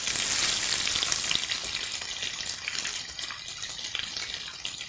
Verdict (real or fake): real